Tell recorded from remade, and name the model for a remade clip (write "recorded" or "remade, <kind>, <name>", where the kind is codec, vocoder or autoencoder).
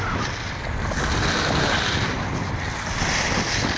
recorded